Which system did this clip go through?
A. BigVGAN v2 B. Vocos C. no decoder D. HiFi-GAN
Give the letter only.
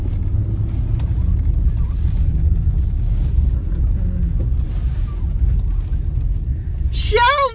C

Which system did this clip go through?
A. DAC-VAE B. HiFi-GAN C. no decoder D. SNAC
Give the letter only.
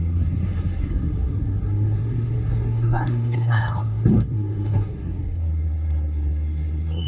D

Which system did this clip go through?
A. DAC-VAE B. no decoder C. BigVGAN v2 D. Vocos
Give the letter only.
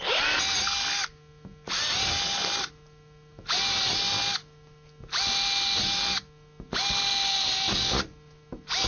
B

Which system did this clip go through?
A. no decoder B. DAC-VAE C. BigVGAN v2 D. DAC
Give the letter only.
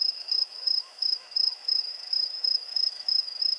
B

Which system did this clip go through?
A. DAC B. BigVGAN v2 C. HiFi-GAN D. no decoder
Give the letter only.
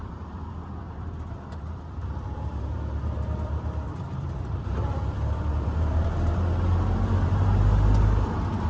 B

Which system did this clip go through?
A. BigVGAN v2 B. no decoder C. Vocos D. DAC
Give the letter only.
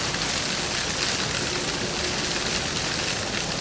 B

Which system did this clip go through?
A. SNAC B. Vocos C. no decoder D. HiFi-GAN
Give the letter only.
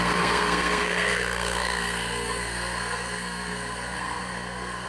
A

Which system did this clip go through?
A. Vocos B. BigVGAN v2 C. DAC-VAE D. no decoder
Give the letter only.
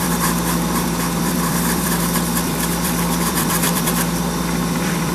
B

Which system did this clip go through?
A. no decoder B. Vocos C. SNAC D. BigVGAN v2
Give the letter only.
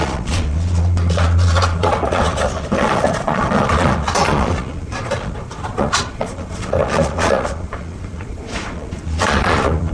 B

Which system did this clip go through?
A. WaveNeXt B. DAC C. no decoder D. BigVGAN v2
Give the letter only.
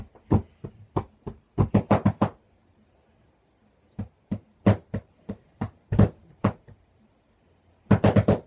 C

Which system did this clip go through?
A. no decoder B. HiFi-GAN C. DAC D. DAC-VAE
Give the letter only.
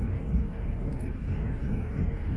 C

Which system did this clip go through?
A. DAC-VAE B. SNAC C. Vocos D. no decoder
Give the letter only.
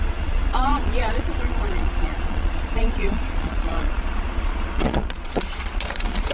C